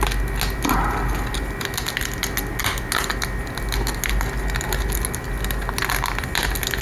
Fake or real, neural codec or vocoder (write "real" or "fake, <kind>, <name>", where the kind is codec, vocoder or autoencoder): real